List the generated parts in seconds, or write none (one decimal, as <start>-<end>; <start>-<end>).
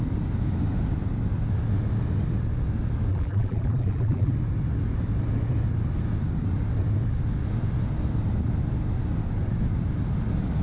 3.1-4.3